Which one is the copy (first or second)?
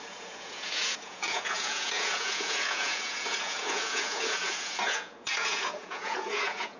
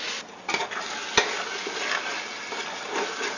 first